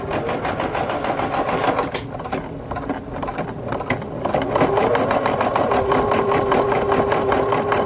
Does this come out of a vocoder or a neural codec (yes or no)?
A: no